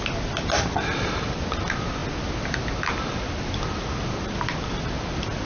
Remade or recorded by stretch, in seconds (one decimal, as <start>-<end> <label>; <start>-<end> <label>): 0.0-5.5 recorded